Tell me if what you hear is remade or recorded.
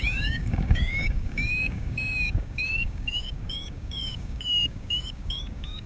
remade